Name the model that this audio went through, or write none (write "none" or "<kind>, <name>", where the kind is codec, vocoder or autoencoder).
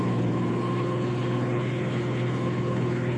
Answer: codec, HILCodec